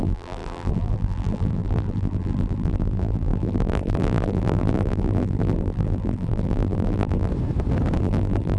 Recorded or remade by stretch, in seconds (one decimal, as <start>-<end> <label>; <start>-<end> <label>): 0.0-7.3 remade; 7.3-8.0 recorded; 8.0-8.6 remade